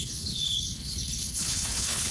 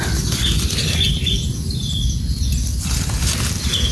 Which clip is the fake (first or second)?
first